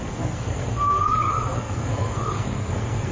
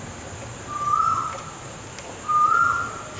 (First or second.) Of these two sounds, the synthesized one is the first